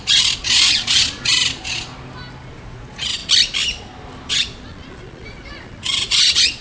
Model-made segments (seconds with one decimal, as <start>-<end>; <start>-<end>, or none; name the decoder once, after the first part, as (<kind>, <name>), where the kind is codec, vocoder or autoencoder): 0.0-1.9 (vocoder, Vocos); 2.5-3.2; 4.3-6.6